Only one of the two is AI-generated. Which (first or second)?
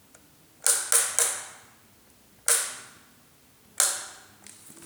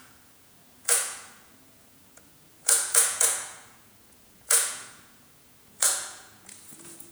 second